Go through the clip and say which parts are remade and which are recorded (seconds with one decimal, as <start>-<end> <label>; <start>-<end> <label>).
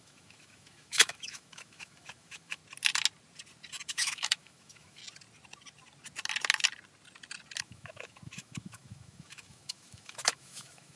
0.0-2.6 remade; 2.6-3.9 recorded; 3.9-5.0 remade; 5.0-7.6 recorded; 7.6-11.0 remade